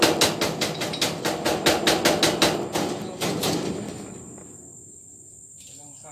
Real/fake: real